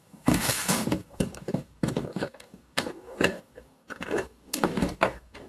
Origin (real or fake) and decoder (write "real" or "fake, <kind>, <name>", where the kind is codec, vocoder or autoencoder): fake, codec, DAC